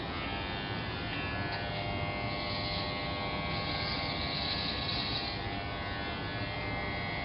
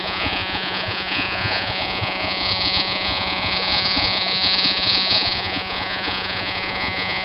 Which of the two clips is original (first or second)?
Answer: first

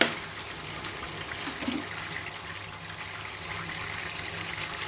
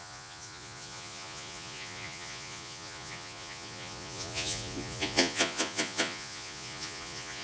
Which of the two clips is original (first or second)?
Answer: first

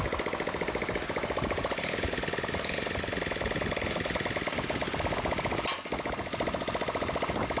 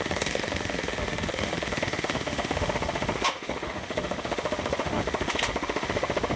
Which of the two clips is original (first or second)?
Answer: first